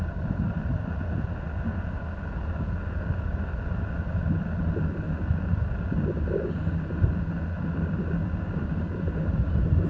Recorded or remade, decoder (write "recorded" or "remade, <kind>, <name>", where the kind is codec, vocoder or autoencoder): recorded